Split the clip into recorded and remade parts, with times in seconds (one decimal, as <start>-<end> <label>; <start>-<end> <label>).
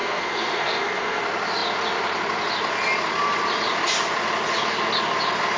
0.0-1.2 remade; 1.2-5.6 recorded